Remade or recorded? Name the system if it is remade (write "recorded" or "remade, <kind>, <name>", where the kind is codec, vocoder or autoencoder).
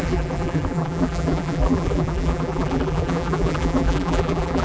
remade, vocoder, BigVGAN v2